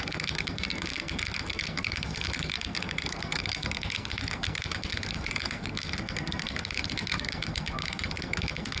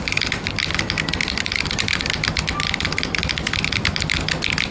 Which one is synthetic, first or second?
first